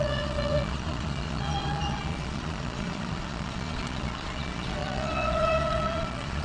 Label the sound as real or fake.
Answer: fake